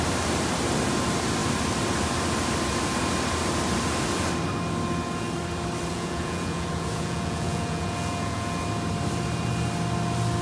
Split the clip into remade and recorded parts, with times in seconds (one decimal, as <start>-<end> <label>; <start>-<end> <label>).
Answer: 0.0-5.9 recorded; 5.9-8.6 remade; 8.6-10.4 recorded